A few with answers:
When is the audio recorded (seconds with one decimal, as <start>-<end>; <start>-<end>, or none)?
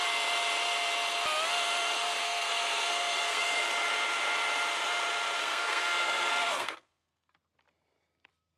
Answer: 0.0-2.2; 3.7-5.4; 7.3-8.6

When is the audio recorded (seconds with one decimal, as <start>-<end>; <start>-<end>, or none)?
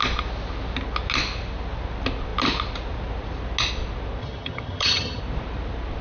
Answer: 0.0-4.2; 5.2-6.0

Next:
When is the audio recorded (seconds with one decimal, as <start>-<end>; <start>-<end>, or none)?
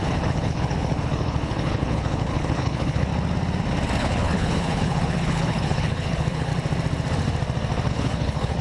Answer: 3.1-4.0; 6.5-7.9